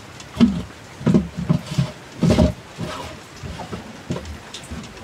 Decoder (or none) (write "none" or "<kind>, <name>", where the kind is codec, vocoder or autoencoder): none